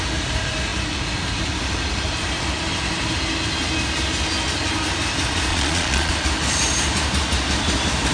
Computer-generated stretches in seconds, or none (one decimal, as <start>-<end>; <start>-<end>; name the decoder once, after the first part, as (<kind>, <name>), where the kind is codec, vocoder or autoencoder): 5.5-6.1 (vocoder, Vocos)